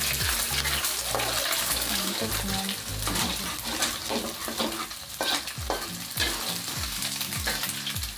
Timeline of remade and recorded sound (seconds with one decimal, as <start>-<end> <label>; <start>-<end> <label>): 0.0-1.6 recorded; 1.6-2.3 remade; 2.3-6.7 recorded; 6.7-7.5 remade; 7.5-8.2 recorded

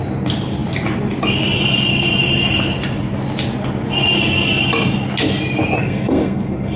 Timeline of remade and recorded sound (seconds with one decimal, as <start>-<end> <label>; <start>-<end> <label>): 0.0-5.8 recorded; 5.8-6.8 remade

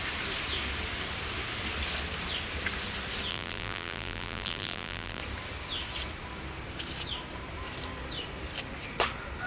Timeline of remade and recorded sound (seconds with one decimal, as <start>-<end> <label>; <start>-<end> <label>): 0.0-3.3 recorded; 3.3-5.2 remade; 5.2-9.5 recorded

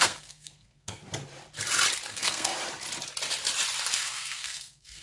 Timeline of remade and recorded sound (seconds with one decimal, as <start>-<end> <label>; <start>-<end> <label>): 0.0-1.0 remade; 1.0-2.1 recorded; 2.1-2.5 remade; 2.5-3.9 recorded; 3.9-5.0 remade

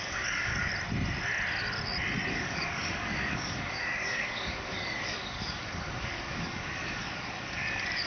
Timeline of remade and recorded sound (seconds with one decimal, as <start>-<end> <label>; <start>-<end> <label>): 0.0-0.7 remade; 0.7-2.3 recorded; 2.3-8.1 remade

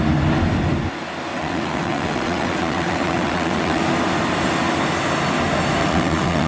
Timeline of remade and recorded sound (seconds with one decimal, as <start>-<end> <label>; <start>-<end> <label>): 0.0-1.3 recorded; 1.3-3.8 remade; 3.8-5.8 recorded; 5.8-6.5 remade

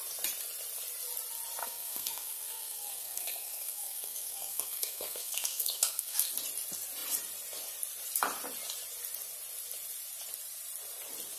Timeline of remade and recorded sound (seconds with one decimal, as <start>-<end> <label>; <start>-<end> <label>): 0.0-1.6 recorded; 1.6-6.3 remade; 6.3-11.4 recorded